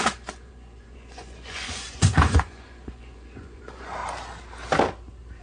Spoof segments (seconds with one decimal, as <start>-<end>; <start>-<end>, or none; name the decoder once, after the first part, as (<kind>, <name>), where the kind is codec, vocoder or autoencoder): 0.0-4.0 (vocoder, Vocos)